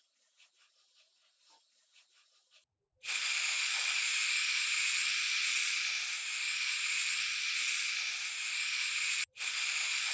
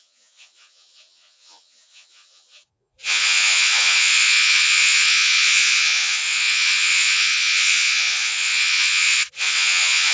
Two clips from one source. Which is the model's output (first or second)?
second